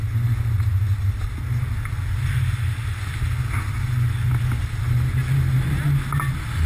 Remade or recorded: recorded